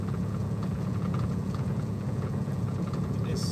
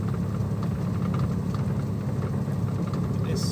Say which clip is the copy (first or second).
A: first